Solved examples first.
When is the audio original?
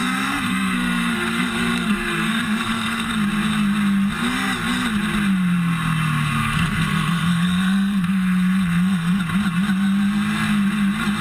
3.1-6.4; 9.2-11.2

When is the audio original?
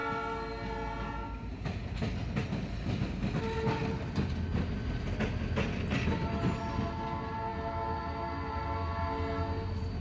0.0-10.0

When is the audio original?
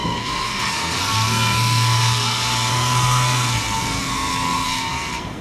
none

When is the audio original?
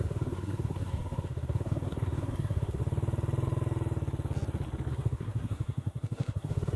2.8-4.9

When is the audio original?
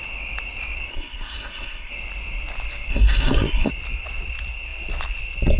0.0-0.9; 1.9-2.9; 3.7-5.6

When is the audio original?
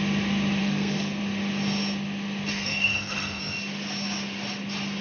0.0-0.6; 1.2-2.5; 3.4-5.0